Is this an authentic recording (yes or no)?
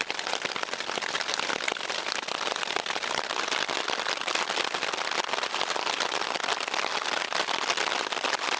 yes